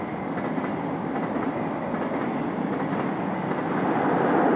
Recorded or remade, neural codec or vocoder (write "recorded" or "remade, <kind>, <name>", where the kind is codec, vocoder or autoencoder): recorded